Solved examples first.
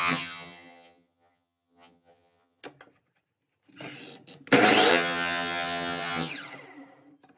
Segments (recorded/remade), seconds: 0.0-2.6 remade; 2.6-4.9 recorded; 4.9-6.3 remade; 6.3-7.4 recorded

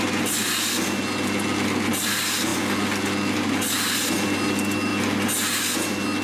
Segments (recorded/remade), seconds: 0.0-6.2 recorded

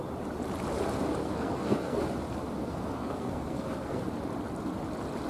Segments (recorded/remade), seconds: 0.0-1.2 recorded; 1.2-2.0 remade; 2.0-2.6 recorded; 2.6-4.0 remade; 4.0-5.3 recorded

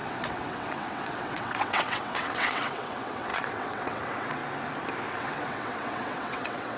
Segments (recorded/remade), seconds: 0.0-4.4 remade; 4.4-5.1 recorded; 5.1-6.8 remade

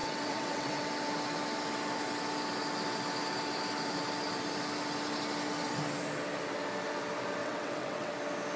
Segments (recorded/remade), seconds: 0.0-0.8 remade; 0.8-7.4 recorded; 7.4-8.1 remade; 8.1-8.6 recorded

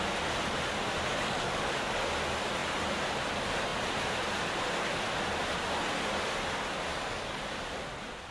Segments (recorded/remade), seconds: 0.0-1.1 recorded; 1.1-1.9 remade; 1.9-6.9 recorded; 6.9-7.4 remade; 7.4-8.3 recorded

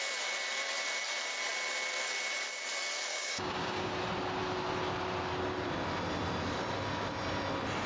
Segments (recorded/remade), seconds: 0.0-3.1 recorded; 3.1-3.9 remade; 3.9-7.9 recorded